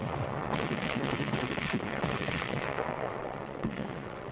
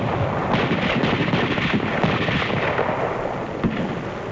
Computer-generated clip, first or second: first